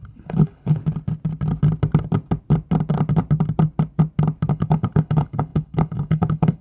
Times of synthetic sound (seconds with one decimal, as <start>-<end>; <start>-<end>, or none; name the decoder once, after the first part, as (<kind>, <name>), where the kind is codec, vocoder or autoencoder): 0.0-0.8 (codec, HILCodec); 4.5-6.6